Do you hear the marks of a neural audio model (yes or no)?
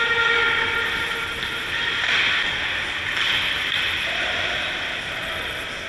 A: no